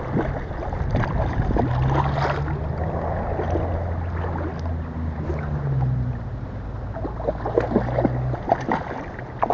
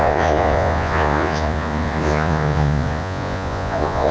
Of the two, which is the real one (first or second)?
first